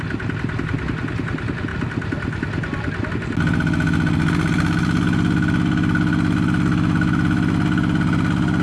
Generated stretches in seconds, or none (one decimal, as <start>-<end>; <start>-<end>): none

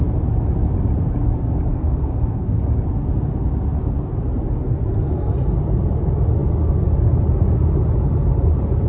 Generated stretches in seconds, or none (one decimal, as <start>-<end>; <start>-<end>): 1.7-2.6

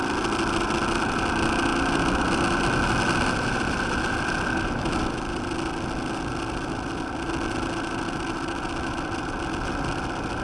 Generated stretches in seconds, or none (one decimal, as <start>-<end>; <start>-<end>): none

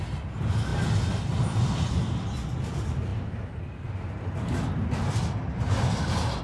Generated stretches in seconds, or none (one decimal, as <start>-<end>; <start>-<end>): none